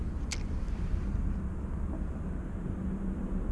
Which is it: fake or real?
real